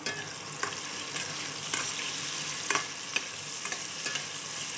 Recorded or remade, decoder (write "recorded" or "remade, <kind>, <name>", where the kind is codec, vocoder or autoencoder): recorded